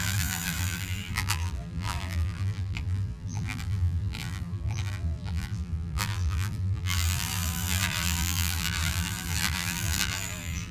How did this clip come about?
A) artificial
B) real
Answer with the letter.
A